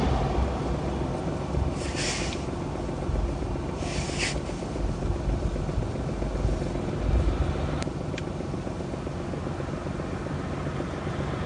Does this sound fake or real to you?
real